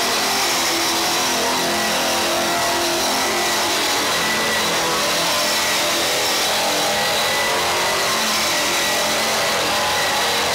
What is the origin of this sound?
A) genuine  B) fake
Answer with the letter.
A